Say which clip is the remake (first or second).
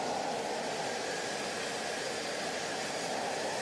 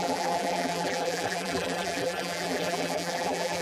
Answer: second